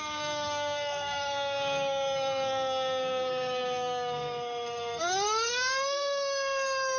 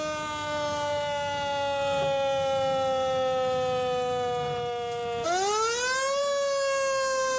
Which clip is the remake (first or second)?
first